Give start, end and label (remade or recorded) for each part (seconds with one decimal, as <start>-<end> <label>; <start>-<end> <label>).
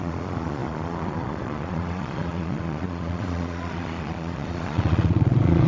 0.0-5.7 remade